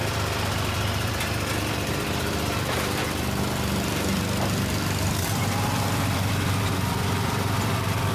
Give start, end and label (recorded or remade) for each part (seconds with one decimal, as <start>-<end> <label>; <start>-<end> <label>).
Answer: 0.0-8.1 remade